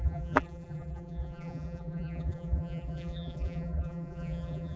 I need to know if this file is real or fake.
fake